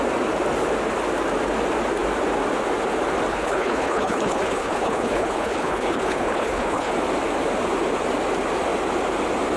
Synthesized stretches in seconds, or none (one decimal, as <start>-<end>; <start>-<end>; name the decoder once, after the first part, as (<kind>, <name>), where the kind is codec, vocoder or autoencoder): 3.3-6.9 (codec, HILCodec)